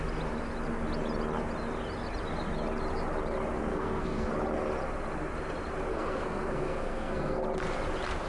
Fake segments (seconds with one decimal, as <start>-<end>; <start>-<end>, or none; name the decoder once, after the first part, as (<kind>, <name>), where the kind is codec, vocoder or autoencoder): 3.7-4.3 (codec, SNAC); 5.9-7.4